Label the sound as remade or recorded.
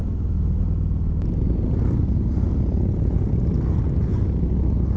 recorded